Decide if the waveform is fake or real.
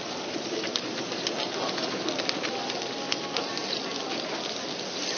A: real